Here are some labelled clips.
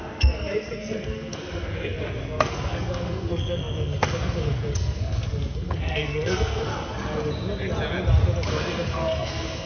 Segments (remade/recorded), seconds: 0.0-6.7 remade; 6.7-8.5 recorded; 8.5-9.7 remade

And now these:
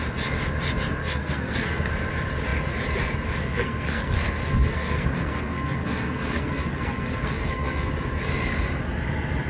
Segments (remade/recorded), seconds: 0.0-1.0 recorded; 1.0-1.9 remade; 1.9-3.4 recorded; 3.4-7.9 remade; 7.9-9.5 recorded

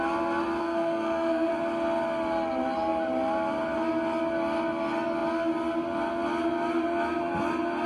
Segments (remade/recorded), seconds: 0.0-0.6 recorded; 0.6-1.5 remade; 1.5-7.9 recorded

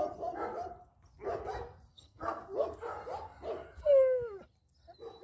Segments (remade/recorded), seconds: 0.0-1.9 recorded; 1.9-2.4 remade; 2.4-5.2 recorded

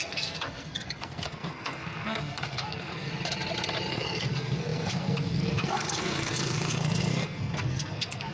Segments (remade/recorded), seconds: 0.0-3.1 remade; 3.1-3.9 recorded; 3.9-8.3 remade

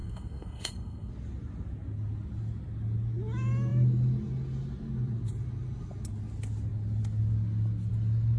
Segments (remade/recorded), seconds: 0.0-1.1 remade; 1.1-8.4 recorded

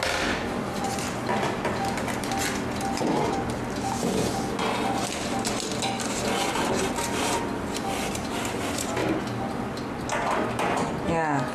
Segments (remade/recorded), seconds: 0.0-11.5 recorded